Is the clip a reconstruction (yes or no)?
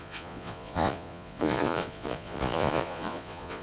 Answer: yes